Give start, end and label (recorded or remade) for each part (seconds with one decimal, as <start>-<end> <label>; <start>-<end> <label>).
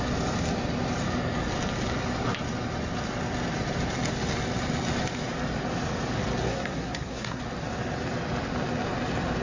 0.0-6.4 recorded; 6.4-7.4 remade; 7.4-9.4 recorded